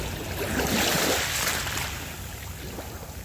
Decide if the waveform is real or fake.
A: real